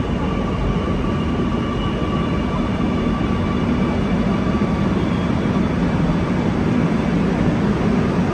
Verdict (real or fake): real